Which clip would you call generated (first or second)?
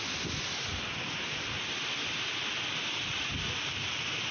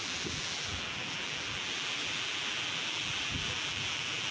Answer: second